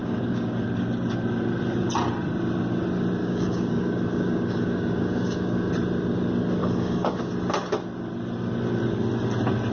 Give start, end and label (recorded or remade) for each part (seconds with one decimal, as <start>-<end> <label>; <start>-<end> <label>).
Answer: 0.0-0.6 remade; 0.6-3.2 recorded; 3.2-5.7 remade; 5.7-6.6 recorded; 6.6-7.3 remade; 7.3-9.7 recorded

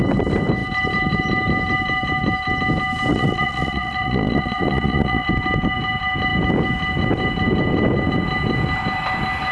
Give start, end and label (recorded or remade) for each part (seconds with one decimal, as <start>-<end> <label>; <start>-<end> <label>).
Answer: 0.0-3.1 recorded; 3.1-5.3 remade; 5.3-9.5 recorded

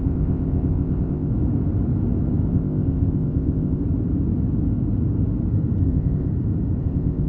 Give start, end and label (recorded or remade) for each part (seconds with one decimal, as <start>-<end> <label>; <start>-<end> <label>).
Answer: 0.0-1.3 remade; 1.3-2.5 recorded; 2.5-3.8 remade; 3.8-5.8 recorded; 5.8-6.3 remade; 6.3-6.8 recorded; 6.8-7.3 remade

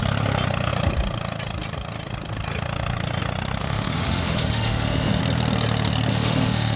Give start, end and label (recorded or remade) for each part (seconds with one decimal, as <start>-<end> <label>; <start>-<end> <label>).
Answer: 0.0-3.6 recorded; 3.6-5.2 remade; 5.2-6.1 recorded; 6.1-6.8 remade

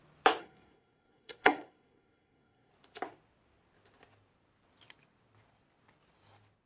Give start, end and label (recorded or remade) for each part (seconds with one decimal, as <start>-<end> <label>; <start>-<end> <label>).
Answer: 0.0-0.4 recorded; 0.4-2.7 remade; 2.7-6.7 recorded

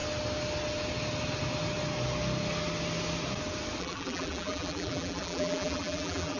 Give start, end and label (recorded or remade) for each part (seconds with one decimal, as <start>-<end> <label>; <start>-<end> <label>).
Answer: 0.0-3.8 recorded; 3.8-6.4 remade